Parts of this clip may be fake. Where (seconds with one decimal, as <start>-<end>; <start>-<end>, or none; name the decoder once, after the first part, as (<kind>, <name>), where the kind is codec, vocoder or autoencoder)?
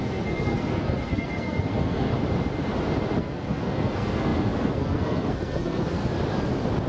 0.0-2.1 (codec, SNAC); 3.2-6.0